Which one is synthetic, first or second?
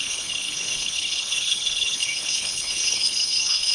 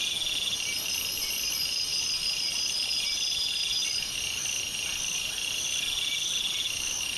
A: first